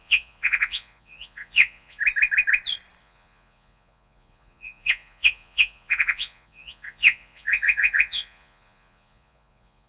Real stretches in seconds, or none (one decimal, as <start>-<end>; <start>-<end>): 2.0-3.0